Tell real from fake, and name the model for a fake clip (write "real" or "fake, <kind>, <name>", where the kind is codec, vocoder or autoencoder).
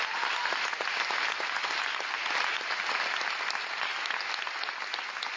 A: real